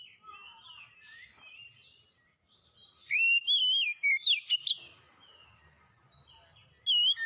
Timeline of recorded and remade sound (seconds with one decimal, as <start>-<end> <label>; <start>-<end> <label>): 0.0-7.3 recorded